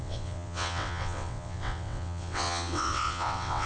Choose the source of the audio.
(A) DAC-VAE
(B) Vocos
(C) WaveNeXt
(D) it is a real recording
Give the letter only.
C